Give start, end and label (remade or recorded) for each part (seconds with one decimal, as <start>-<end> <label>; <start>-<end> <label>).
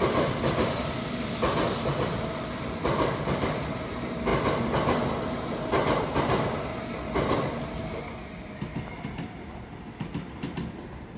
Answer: 0.0-11.2 recorded